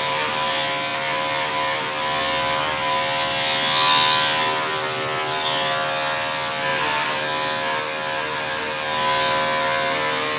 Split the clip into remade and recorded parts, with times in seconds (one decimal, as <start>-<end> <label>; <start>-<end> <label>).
0.0-10.4 recorded